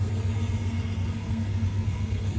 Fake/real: fake